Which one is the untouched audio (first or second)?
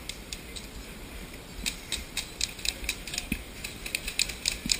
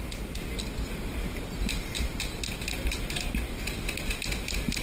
second